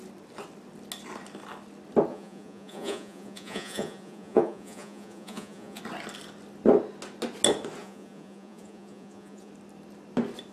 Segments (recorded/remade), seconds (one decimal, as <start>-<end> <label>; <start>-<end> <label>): 0.0-2.1 recorded; 2.1-5.8 remade; 5.8-7.8 recorded; 7.8-9.5 remade; 9.5-10.5 recorded